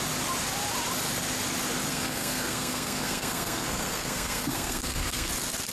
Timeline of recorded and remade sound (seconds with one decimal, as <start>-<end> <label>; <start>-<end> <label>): 0.0-1.9 recorded; 1.9-5.3 remade; 5.3-5.7 recorded